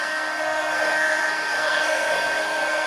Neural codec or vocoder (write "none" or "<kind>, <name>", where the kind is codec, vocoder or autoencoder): codec, SNAC